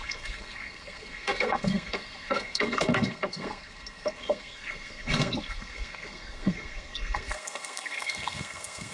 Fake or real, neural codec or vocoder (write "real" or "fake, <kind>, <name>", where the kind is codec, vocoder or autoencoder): fake, codec, SNAC